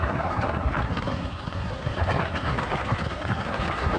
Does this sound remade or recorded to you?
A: remade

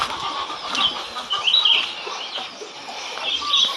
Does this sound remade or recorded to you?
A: recorded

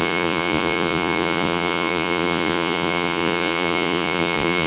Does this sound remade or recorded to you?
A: remade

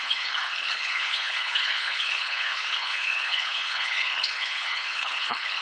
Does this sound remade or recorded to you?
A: remade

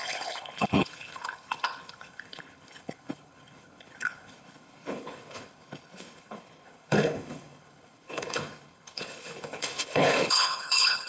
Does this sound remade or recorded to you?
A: remade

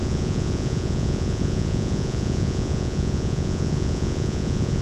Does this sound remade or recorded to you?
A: remade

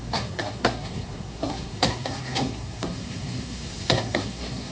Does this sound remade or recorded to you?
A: remade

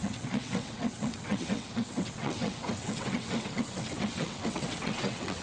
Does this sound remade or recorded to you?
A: remade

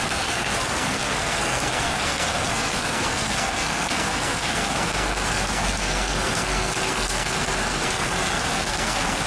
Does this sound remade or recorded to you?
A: remade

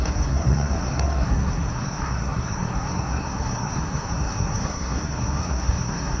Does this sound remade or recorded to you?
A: remade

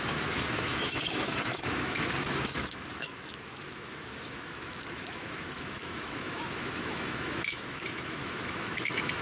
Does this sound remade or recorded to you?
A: remade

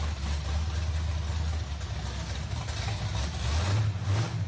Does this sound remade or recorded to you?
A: recorded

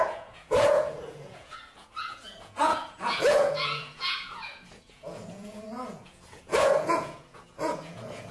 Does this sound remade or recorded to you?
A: remade